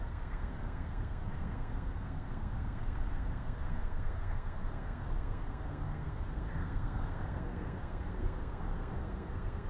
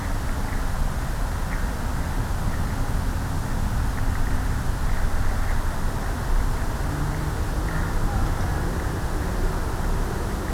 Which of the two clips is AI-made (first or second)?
first